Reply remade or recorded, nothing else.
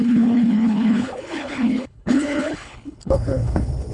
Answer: remade